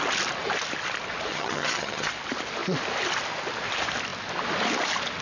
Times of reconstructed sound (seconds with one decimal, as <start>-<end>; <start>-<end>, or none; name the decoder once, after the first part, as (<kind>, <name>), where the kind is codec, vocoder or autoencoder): 1.3-2.1 (vocoder, HiFi-GAN)